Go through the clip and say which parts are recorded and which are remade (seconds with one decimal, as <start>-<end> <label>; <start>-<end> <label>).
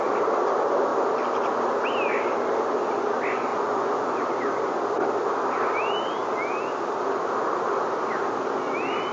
0.0-3.5 recorded; 3.5-4.2 remade; 4.2-9.1 recorded